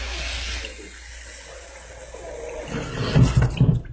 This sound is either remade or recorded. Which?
recorded